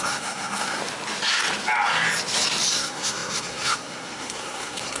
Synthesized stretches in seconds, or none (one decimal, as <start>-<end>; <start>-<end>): 0.0-0.8; 2.7-5.0